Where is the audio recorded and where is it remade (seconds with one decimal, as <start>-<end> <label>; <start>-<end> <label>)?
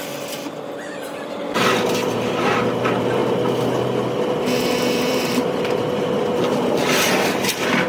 0.0-3.2 remade; 3.2-4.9 recorded; 4.9-7.9 remade